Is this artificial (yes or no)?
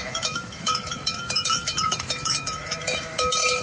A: yes